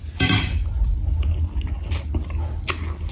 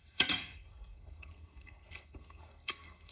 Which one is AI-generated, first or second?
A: second